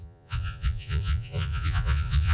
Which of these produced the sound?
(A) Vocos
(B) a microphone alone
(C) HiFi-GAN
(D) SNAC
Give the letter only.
A